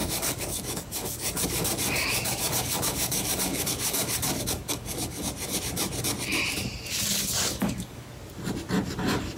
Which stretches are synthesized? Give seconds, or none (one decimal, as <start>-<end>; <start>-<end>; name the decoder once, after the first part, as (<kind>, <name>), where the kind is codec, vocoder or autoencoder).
0.0-5.2 (codec, DAC); 7.5-8.1

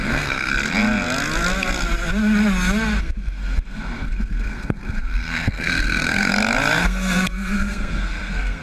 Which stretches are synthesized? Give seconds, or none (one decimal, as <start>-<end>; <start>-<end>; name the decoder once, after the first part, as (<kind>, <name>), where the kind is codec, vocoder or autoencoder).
0.0-0.5 (codec, SNAC); 3.0-6.3; 6.8-8.6

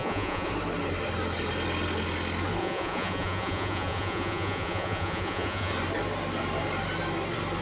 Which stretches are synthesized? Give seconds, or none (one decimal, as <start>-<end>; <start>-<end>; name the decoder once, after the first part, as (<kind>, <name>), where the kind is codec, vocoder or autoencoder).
0.0-0.5 (vocoder, Vocos); 2.6-5.7

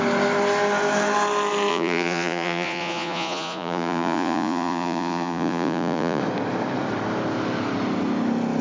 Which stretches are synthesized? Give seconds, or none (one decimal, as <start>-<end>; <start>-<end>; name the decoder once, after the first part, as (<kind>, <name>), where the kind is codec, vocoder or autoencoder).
1.7-6.2 (vocoder, Vocos)

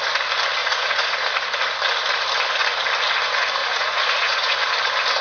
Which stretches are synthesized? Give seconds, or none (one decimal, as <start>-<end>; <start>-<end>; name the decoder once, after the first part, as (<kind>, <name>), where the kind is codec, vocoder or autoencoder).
0.6-1.3 (vocoder, Vocos); 3.6-4.7